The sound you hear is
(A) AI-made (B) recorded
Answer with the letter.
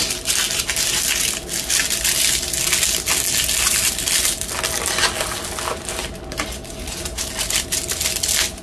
B